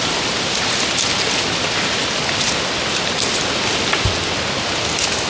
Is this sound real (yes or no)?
yes